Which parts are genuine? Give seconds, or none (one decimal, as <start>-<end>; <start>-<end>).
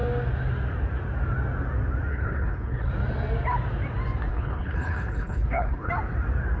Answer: 0.0-2.1; 2.9-4.3; 5.9-6.6